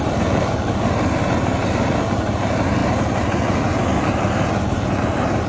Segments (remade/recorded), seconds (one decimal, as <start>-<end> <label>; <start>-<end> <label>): 0.0-5.5 recorded